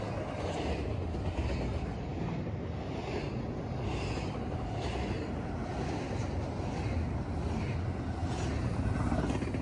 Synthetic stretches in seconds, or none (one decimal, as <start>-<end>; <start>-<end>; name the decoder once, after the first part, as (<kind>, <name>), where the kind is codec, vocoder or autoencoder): none